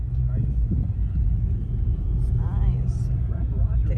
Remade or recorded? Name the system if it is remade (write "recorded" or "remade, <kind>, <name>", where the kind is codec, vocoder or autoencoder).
recorded